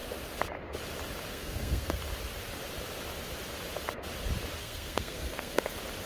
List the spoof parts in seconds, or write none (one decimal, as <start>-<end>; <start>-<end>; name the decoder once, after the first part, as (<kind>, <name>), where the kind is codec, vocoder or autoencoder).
1.3-2.0 (codec, SNAC); 4.6-5.6